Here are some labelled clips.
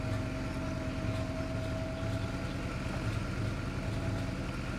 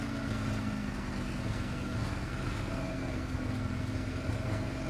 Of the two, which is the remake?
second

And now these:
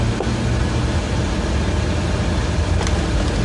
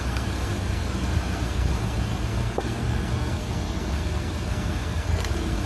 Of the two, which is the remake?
second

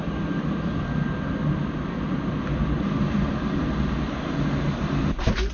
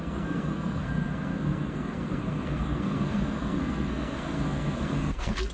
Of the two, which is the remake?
second